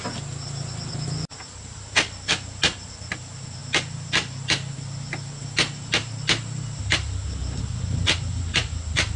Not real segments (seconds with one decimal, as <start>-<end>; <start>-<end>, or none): none